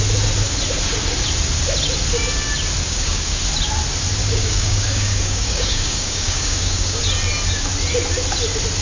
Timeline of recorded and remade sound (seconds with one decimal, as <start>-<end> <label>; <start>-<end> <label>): 0.0-2.8 recorded; 2.8-3.4 remade; 3.4-4.2 recorded; 4.2-7.0 remade; 7.0-8.8 recorded